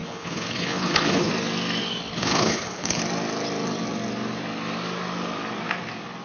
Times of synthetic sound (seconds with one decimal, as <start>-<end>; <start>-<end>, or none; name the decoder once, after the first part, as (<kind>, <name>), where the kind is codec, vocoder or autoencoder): 0.0-1.3 (codec, HILCodec); 2.1-3.0